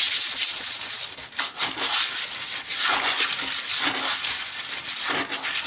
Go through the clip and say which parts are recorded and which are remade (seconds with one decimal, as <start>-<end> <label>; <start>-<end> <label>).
0.0-2.7 recorded; 2.7-3.2 remade; 3.2-5.7 recorded